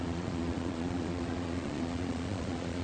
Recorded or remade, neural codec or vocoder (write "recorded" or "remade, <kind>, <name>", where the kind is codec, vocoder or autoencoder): remade, vocoder, Vocos